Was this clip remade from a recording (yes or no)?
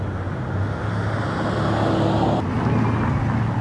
no